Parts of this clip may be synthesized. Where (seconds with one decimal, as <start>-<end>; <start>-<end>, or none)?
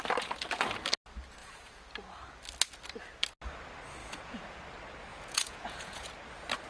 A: 1.4-1.9; 4.0-4.6; 5.1-6.1